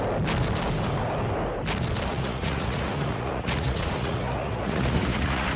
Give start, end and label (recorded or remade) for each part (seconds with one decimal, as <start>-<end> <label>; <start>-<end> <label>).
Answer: 0.0-2.1 recorded; 2.1-5.6 remade